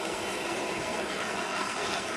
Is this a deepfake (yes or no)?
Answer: yes